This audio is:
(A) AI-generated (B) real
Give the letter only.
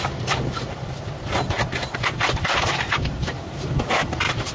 A